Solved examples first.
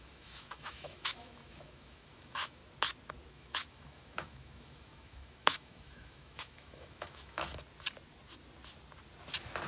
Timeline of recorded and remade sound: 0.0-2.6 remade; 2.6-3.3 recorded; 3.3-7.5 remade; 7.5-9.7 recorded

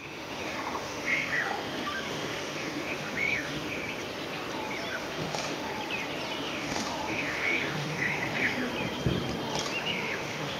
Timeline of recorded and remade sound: 0.0-3.8 remade; 3.8-4.9 recorded; 4.9-5.7 remade; 5.7-6.4 recorded; 6.4-8.7 remade; 8.7-9.8 recorded; 9.8-10.6 remade

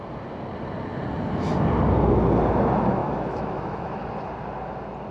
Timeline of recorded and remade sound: 0.0-3.0 recorded; 3.0-4.0 remade; 4.0-5.1 recorded

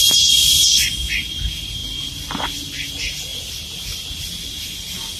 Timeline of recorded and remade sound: 0.0-5.2 recorded

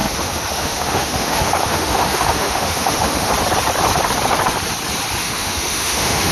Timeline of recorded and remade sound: 0.0-3.3 remade; 3.3-5.2 recorded; 5.2-6.3 remade

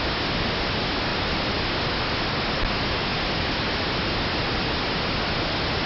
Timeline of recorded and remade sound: 0.0-5.9 recorded